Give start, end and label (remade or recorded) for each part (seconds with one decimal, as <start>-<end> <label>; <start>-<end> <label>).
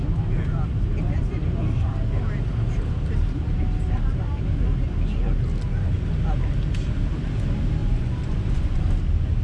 0.0-7.8 recorded; 7.8-8.8 remade; 8.8-9.4 recorded